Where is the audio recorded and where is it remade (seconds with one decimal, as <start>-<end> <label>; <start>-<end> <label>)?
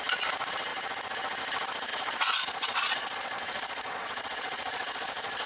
0.0-1.9 recorded; 1.9-5.5 remade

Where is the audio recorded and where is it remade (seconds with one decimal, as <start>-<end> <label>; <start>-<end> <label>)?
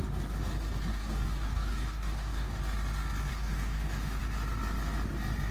0.0-0.9 recorded; 0.9-2.6 remade; 2.6-3.3 recorded; 3.3-4.2 remade; 4.2-5.5 recorded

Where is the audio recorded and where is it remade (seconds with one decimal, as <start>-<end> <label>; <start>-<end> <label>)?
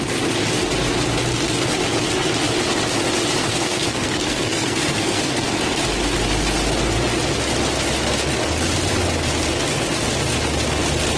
0.0-3.4 recorded; 3.4-5.5 remade; 5.5-11.2 recorded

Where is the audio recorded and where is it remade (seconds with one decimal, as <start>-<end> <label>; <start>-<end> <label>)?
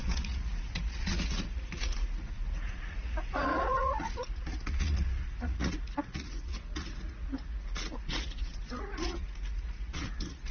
0.0-10.5 remade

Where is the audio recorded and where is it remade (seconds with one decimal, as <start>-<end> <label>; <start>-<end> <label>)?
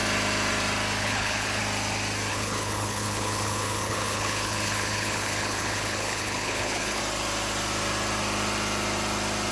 0.0-1.0 recorded; 1.0-1.6 remade; 1.6-2.3 recorded; 2.3-7.0 remade; 7.0-9.5 recorded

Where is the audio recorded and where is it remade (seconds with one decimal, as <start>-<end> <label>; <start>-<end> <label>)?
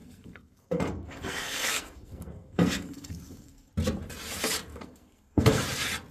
0.0-3.7 remade; 3.7-4.7 recorded; 4.7-5.6 remade; 5.6-6.1 recorded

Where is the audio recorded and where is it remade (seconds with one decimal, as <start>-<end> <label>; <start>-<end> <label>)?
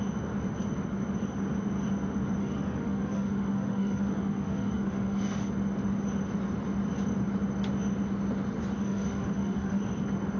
0.0-2.4 recorded; 2.4-5.5 remade; 5.5-8.8 recorded; 8.8-9.8 remade; 9.8-10.4 recorded